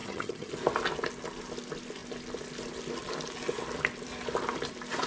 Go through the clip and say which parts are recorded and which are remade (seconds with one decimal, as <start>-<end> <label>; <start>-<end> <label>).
0.0-0.5 remade; 0.5-5.1 recorded